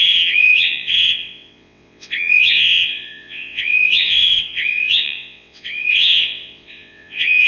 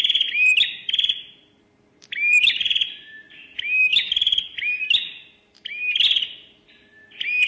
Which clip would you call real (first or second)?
second